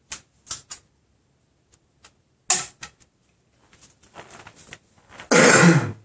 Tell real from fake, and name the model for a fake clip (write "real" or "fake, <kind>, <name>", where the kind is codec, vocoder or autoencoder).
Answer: real